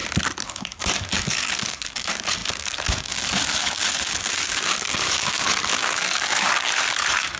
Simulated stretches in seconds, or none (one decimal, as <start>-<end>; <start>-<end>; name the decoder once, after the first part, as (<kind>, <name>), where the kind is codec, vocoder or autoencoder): 0.5-7.4 (codec, DAC)